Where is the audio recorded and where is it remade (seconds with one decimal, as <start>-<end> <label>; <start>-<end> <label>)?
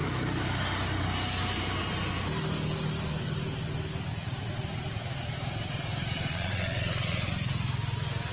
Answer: 0.0-6.3 recorded; 6.3-7.3 remade; 7.3-8.3 recorded